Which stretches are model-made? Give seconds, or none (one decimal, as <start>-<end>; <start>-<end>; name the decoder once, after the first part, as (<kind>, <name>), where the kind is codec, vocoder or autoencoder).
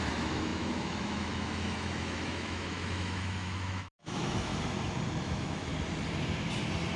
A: 0.0-4.5 (autoencoder, DAC-VAE); 5.2-5.7